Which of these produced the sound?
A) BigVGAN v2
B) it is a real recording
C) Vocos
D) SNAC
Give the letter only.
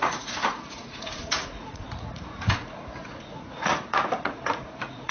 C